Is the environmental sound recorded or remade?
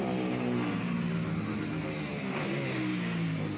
recorded